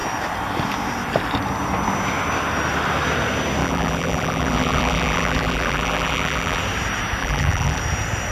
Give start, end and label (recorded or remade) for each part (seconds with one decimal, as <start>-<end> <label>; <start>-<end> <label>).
0.0-3.6 recorded; 3.6-6.6 remade; 6.6-7.2 recorded; 7.2-7.8 remade; 7.8-8.3 recorded